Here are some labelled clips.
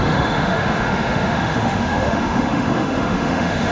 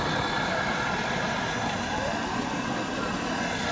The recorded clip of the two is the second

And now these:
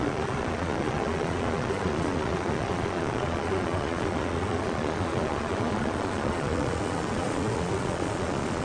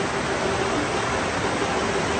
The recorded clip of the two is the second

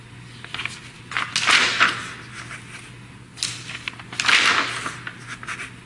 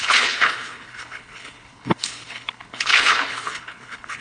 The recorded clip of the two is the first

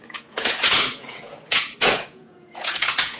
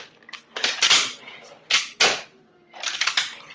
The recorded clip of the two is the second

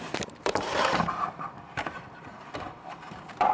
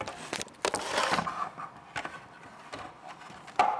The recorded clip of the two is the second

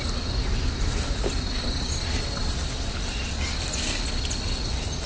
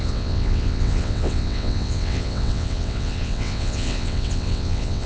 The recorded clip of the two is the first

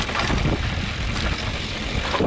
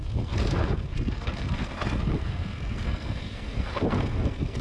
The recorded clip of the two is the first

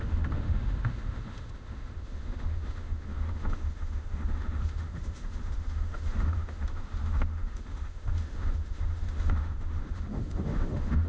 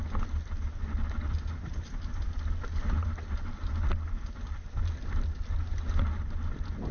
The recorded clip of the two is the second